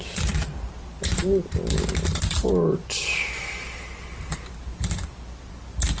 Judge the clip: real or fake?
real